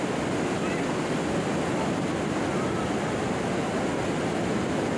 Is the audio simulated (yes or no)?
no